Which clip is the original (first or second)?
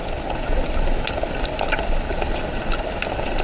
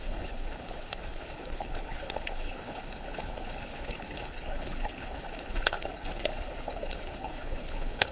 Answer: first